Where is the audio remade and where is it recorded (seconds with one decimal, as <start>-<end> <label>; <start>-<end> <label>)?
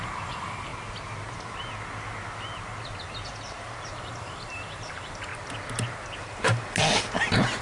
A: 0.0-0.7 remade; 0.7-3.9 recorded; 3.9-5.3 remade; 5.3-7.6 recorded